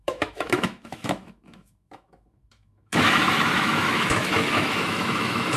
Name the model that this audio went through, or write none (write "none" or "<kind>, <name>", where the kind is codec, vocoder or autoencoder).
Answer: autoencoder, DAC-VAE